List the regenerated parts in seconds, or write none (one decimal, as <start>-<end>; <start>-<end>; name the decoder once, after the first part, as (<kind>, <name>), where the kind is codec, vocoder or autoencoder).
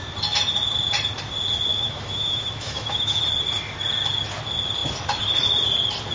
1.7-3.2 (autoencoder, DAC-VAE)